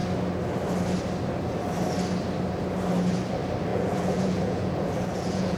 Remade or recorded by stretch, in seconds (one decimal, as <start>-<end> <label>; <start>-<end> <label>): 0.0-3.7 recorded; 3.7-5.6 remade